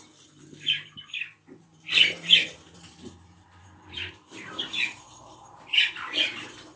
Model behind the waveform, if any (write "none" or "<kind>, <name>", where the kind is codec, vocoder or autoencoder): vocoder, BigVGAN v2